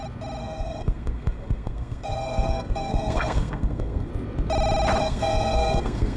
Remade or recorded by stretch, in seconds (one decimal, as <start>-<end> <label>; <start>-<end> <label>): 0.0-0.4 recorded; 0.4-4.1 remade; 4.1-5.0 recorded; 5.0-6.2 remade